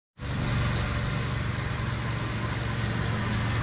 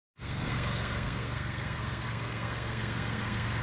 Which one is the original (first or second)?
first